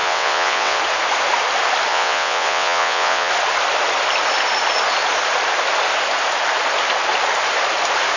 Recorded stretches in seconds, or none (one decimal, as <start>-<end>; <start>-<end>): 0.8-1.9; 3.3-8.2